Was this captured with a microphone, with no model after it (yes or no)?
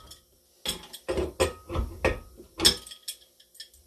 yes